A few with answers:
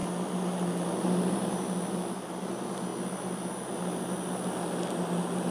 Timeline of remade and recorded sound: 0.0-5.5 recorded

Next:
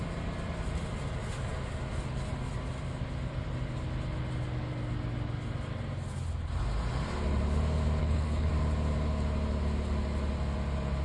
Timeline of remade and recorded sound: 0.0-8.0 recorded; 8.0-8.5 remade; 8.5-11.0 recorded

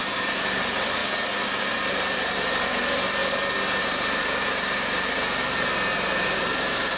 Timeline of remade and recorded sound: 0.0-1.0 remade; 1.0-1.7 recorded; 1.7-3.2 remade; 3.2-3.8 recorded; 3.8-7.0 remade

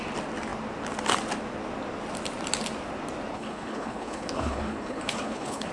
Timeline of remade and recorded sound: 0.0-3.3 recorded; 3.3-5.7 remade

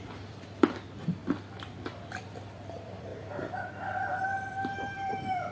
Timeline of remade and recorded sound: 0.0-1.2 remade; 1.2-2.2 recorded; 2.2-3.1 remade; 3.1-3.6 recorded; 3.6-5.5 remade

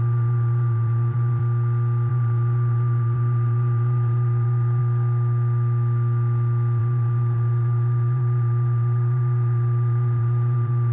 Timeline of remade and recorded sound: 0.0-1.4 remade; 1.4-2.1 recorded; 2.1-4.8 remade; 4.8-6.8 recorded; 6.8-10.9 remade

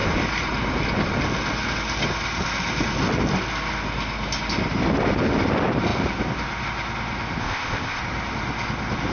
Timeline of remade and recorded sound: 0.0-7.4 recorded; 7.4-8.0 remade; 8.0-9.1 recorded